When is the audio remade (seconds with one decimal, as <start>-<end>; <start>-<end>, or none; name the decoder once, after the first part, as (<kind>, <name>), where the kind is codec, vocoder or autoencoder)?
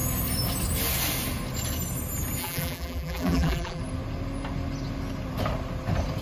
2.4-3.8 (vocoder, BigVGAN v2)